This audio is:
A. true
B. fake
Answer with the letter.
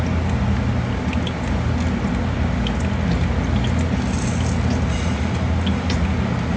A